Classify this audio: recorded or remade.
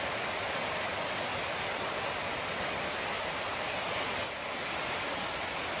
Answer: recorded